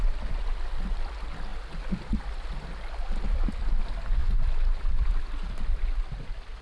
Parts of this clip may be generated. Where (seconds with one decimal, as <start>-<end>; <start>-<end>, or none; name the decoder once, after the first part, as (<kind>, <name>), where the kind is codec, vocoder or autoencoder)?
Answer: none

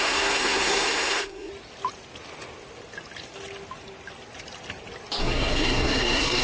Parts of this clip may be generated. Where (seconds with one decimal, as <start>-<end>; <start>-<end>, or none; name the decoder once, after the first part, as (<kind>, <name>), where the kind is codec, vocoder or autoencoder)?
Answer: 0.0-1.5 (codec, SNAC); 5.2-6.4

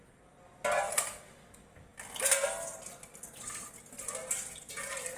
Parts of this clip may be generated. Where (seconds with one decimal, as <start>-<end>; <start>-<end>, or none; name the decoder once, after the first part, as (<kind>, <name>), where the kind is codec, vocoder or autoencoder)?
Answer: none

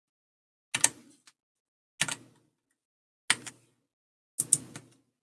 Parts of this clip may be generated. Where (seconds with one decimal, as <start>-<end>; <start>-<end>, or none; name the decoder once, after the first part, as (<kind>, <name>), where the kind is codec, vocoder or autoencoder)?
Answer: none

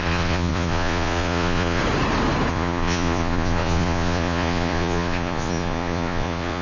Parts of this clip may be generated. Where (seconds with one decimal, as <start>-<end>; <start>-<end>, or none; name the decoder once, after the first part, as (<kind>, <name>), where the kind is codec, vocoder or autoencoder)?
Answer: 0.0-1.8 (vocoder, Vocos); 2.5-6.6

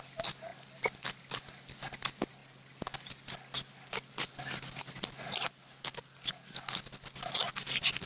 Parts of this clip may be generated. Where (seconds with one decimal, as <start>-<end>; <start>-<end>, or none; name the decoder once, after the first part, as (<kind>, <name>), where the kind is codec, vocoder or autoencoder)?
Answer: none

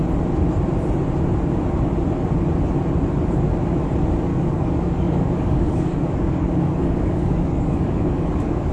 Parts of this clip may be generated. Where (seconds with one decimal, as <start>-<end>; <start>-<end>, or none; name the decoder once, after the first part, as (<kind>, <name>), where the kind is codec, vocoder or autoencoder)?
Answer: 4.3-8.7 (codec, DAC)